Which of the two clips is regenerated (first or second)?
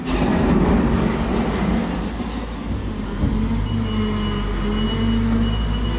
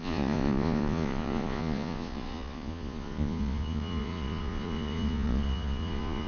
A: second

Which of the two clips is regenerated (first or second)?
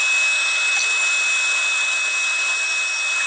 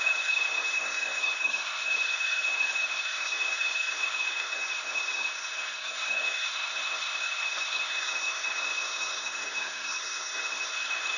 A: second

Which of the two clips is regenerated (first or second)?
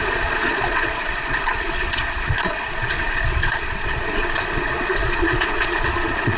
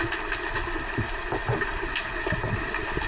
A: first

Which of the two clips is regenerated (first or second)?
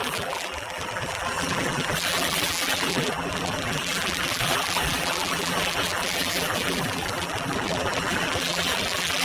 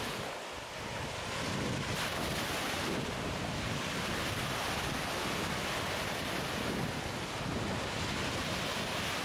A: first